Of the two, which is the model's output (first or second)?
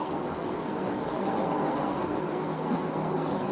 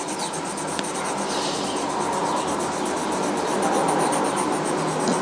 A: first